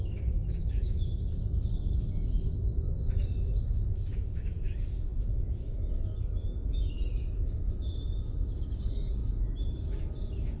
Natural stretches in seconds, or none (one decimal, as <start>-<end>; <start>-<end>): none